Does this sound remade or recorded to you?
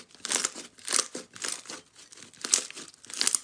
recorded